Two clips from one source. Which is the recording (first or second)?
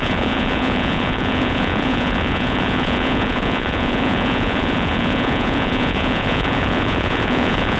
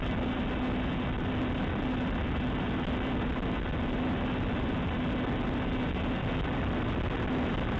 second